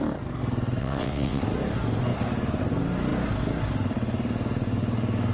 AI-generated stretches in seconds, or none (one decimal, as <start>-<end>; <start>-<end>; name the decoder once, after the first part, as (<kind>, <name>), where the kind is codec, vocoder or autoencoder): 0.8-1.4 (vocoder, WaveNeXt)